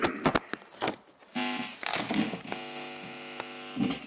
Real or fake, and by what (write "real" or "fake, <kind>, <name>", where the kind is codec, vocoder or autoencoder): real